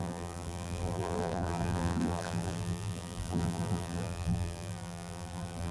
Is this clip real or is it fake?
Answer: fake